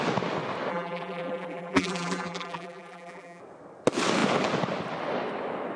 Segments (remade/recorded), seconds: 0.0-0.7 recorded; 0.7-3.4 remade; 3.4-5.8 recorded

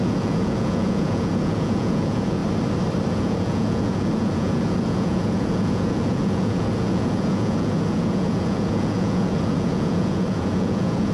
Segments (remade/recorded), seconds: 0.0-2.4 remade; 2.4-3.1 recorded; 3.1-11.1 remade

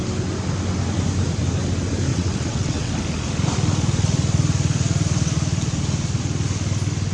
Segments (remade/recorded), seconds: 0.0-2.1 recorded; 2.1-2.9 remade; 2.9-7.1 recorded

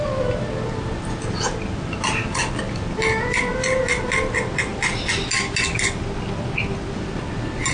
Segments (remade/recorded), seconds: 0.0-7.7 recorded

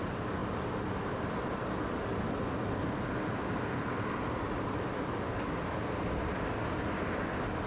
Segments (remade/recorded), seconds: 0.0-7.7 recorded

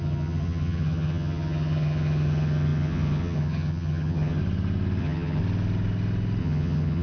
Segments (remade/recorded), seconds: 0.0-4.4 remade; 4.4-5.0 recorded; 5.0-5.4 remade; 5.4-6.4 recorded; 6.4-7.0 remade